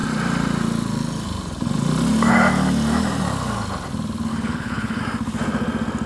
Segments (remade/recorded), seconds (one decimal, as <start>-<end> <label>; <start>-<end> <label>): 0.0-4.3 recorded; 4.3-5.0 remade; 5.0-6.1 recorded